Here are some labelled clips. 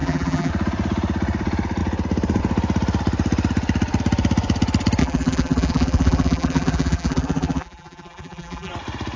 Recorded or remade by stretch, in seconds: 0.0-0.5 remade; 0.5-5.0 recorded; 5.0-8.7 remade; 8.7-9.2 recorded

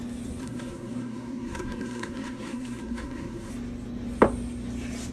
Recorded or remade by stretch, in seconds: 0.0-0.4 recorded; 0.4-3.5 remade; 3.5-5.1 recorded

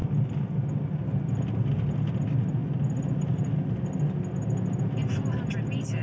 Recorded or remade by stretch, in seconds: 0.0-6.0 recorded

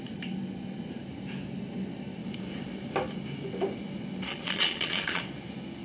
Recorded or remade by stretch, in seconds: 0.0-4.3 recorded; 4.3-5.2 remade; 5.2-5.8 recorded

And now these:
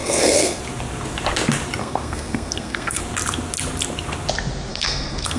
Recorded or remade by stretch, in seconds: 0.0-0.6 remade; 0.6-1.8 recorded; 1.8-3.0 remade; 3.0-4.7 recorded; 4.7-5.4 remade

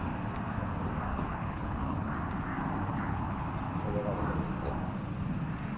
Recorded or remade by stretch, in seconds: 0.0-1.1 recorded; 1.1-2.1 remade; 2.1-2.9 recorded; 2.9-3.5 remade; 3.5-5.8 recorded

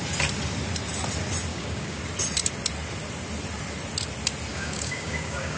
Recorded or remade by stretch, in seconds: 0.0-1.5 recorded; 1.5-2.0 remade; 2.0-4.5 recorded; 4.5-5.6 remade

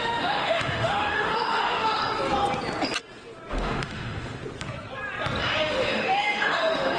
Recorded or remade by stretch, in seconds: 0.0-2.0 remade; 2.0-3.5 recorded; 3.5-4.4 remade; 4.4-5.4 recorded; 5.4-7.0 remade